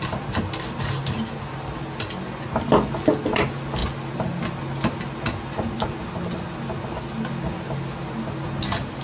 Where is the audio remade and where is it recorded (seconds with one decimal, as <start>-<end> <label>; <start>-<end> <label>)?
0.0-9.0 recorded